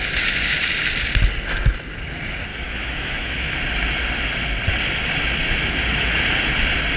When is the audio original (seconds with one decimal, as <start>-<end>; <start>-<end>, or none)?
0.0-2.5; 3.5-7.0